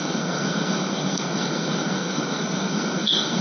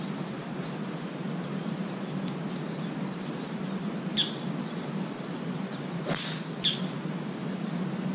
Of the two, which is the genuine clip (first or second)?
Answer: second